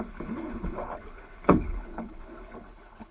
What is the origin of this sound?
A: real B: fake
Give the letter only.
B